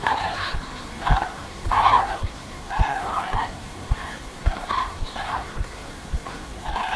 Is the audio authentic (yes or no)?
no